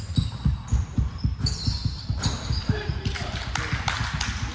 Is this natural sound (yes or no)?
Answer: yes